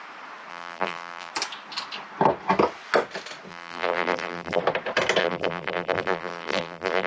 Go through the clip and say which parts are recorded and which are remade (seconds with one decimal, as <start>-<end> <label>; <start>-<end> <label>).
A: 0.0-0.5 recorded; 0.5-1.3 remade; 1.3-3.5 recorded; 3.5-4.6 remade; 4.6-5.2 recorded; 5.2-7.1 remade

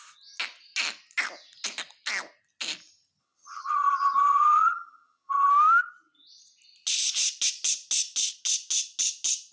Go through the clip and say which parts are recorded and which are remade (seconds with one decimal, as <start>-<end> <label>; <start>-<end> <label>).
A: 0.0-3.2 recorded; 3.2-5.5 remade; 5.5-9.5 recorded